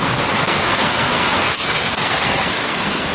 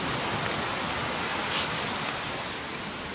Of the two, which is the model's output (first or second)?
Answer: first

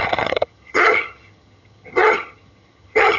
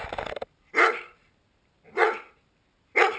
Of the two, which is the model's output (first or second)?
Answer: first